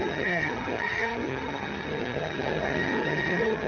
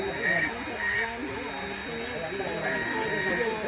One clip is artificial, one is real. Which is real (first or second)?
second